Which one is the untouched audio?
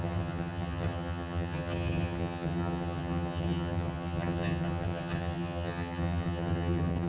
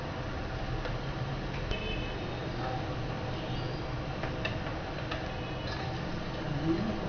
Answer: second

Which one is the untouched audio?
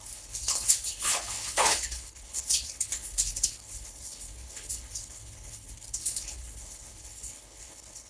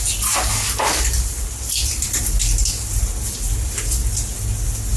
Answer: second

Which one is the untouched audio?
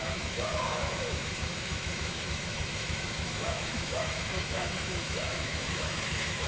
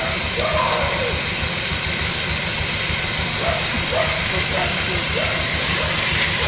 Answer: second